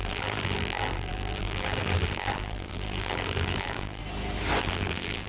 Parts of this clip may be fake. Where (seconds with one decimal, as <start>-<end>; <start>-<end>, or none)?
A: 0.0-4.0; 4.6-5.3